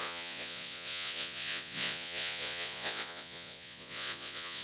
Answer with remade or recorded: remade